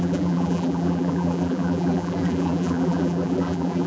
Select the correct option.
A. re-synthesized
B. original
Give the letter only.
A